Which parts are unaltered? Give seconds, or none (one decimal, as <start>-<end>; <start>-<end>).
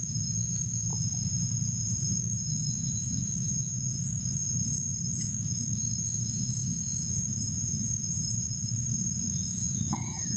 0.9-2.0